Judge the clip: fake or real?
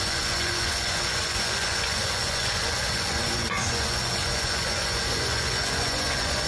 fake